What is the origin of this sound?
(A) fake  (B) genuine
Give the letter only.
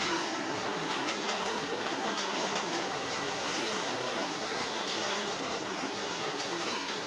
A